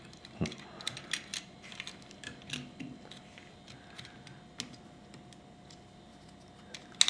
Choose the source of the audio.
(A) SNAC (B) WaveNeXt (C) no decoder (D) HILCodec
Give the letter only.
C